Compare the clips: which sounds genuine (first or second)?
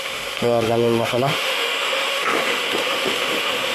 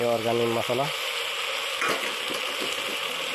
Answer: second